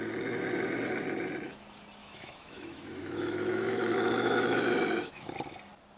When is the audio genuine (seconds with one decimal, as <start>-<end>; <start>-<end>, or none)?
0.0-2.0; 5.2-6.0